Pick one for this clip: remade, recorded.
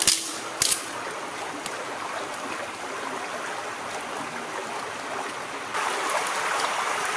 recorded